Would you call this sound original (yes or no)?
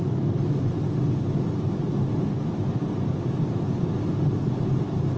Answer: yes